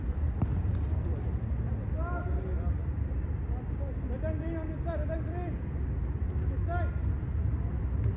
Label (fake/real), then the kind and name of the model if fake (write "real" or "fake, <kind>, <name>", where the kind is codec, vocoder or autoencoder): real